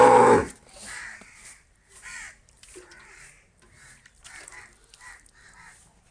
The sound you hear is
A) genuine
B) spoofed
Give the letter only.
B